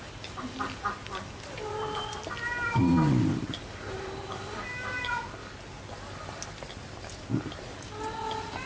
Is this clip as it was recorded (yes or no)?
yes